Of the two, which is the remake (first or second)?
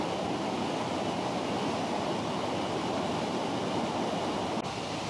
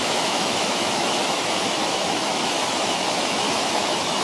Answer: second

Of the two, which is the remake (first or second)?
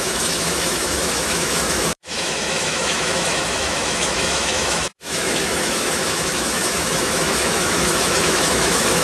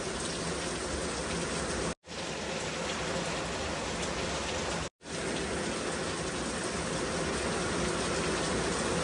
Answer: first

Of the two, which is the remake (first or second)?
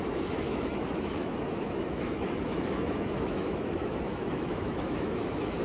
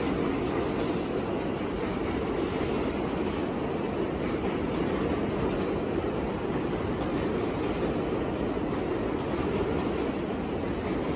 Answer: first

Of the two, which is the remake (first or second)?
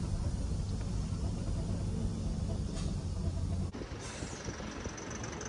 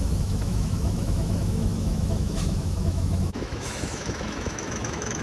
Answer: second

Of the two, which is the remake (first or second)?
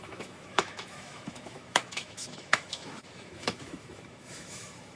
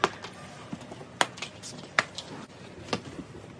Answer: first